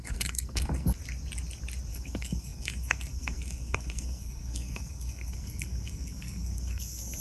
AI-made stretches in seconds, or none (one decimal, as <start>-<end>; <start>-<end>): 0.0-1.0; 1.9-7.2